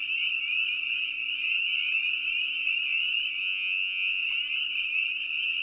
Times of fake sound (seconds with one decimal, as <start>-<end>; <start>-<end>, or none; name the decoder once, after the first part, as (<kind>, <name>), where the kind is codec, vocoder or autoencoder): 3.4-4.2 (vocoder, Vocos)